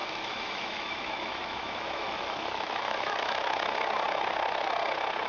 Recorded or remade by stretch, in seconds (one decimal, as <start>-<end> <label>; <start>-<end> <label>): 0.0-3.2 remade; 3.2-5.3 recorded